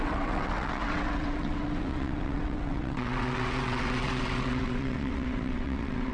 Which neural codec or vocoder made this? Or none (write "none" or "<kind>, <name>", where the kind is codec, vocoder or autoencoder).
vocoder, WaveNeXt